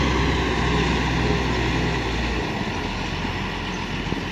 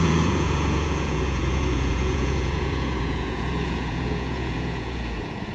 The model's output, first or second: second